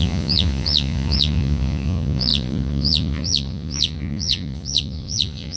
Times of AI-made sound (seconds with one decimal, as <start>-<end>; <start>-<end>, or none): 0.0-5.6